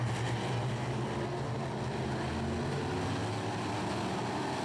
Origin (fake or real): real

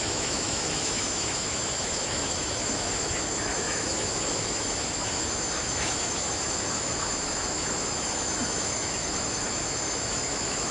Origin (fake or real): fake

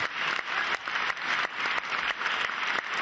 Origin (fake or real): real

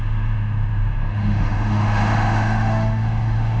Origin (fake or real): fake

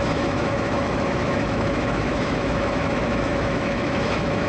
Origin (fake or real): fake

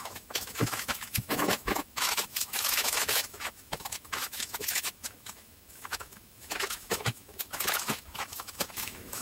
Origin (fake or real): fake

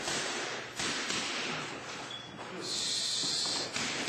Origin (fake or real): real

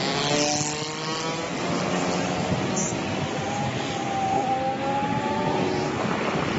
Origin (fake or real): real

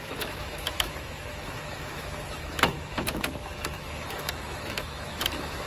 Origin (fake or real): fake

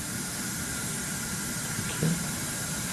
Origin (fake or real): real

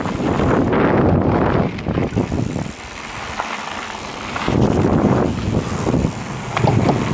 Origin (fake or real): real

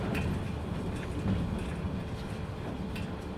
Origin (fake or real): real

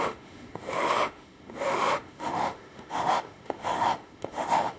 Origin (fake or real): fake